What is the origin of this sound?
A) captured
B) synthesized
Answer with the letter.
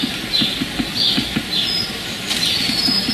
A